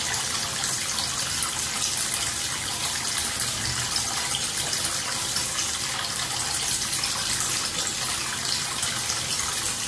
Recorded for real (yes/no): yes